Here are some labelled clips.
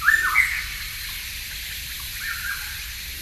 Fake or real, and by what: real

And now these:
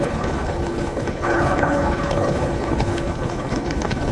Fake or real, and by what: fake, codec, HILCodec